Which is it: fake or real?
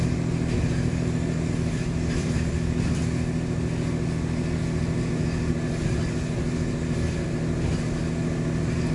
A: real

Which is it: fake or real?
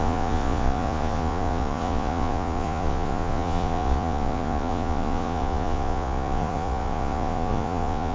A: fake